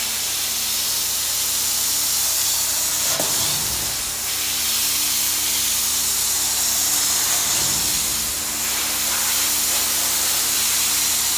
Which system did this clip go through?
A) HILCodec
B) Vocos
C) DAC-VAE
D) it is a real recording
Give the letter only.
D